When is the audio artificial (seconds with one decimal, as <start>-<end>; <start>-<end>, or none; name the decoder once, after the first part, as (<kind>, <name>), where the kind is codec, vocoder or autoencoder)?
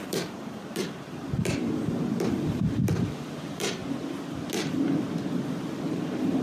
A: 0.0-3.8 (vocoder, BigVGAN v2); 5.5-6.4